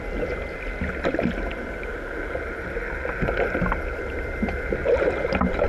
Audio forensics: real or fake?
real